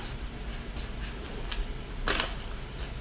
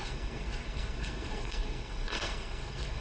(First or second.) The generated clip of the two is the second